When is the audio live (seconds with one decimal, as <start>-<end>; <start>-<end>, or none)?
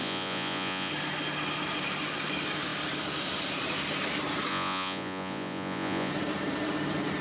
0.9-4.5; 6.1-7.2